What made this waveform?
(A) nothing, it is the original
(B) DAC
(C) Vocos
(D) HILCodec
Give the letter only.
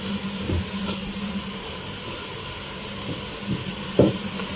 A